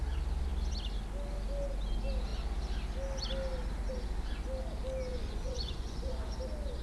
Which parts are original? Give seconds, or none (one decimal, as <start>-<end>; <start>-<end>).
0.0-5.1; 6.3-6.8